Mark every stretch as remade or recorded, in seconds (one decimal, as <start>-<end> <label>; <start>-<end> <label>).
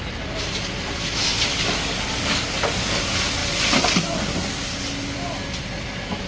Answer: 0.0-1.5 recorded; 1.5-3.0 remade; 3.0-6.3 recorded